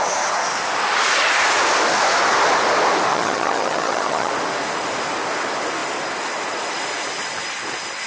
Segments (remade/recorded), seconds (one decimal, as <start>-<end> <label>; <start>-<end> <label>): 0.0-3.1 recorded; 3.1-4.3 remade; 4.3-8.1 recorded

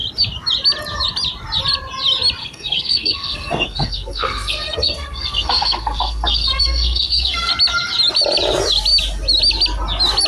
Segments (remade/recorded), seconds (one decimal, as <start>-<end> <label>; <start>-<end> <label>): 0.0-2.4 recorded; 2.4-7.5 remade; 7.5-10.3 recorded